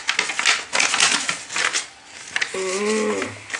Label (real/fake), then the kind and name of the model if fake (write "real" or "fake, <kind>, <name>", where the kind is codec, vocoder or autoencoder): real